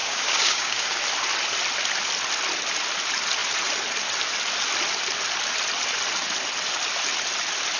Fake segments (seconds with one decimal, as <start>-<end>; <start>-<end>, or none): 0.0-1.0